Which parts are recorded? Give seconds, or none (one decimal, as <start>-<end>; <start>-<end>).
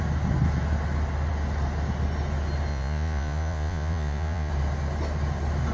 0.0-2.7; 4.5-5.7